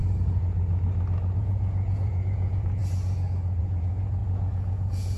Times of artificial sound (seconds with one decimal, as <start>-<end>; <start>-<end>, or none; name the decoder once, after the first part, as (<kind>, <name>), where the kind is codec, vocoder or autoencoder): 1.4-2.8 (vocoder, Vocos); 3.6-5.2